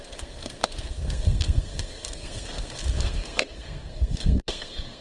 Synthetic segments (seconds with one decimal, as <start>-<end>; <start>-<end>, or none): 0.0-5.0